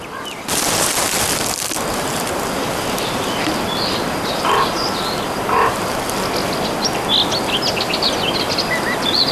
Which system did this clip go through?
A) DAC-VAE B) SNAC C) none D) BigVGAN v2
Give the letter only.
C